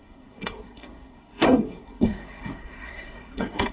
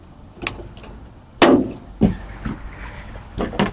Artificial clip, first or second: first